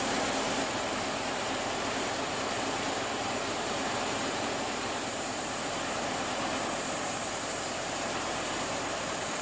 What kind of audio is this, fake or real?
fake